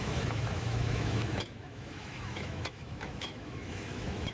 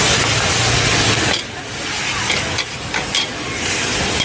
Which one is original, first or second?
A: second